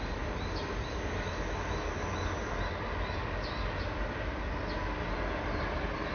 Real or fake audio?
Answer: real